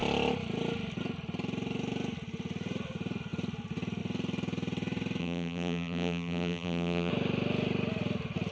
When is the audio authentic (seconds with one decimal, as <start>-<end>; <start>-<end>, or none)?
0.0-5.2; 7.1-8.5